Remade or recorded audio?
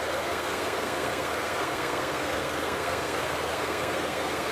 remade